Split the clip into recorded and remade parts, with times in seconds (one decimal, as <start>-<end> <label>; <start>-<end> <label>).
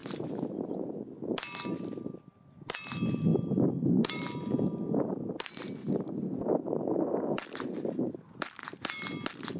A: 0.0-2.5 recorded; 2.5-8.6 remade; 8.6-9.6 recorded